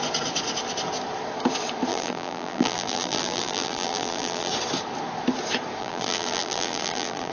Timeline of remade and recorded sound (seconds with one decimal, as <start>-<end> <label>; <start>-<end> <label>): 0.0-1.9 recorded; 1.9-4.5 remade; 4.5-5.8 recorded; 5.8-7.3 remade